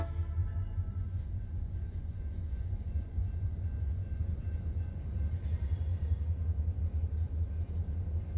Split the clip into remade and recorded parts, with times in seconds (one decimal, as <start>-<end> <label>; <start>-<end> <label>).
0.0-0.4 recorded; 0.4-5.0 remade; 5.0-8.4 recorded